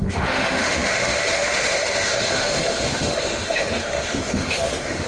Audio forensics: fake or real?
fake